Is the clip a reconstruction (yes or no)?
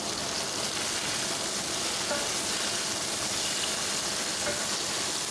no